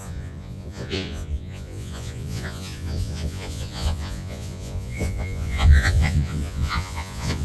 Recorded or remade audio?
remade